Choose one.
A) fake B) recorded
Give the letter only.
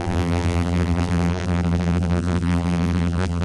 A